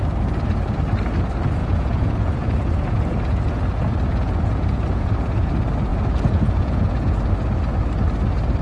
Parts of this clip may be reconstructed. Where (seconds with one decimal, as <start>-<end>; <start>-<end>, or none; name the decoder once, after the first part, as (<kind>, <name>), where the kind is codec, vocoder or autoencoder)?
1.6-5.5 (vocoder, Vocos); 5.9-7.3